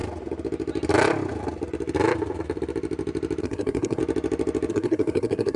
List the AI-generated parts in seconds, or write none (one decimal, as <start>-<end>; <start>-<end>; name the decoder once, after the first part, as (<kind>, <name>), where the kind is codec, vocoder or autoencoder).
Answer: 3.4-4.0 (codec, SNAC); 4.7-5.6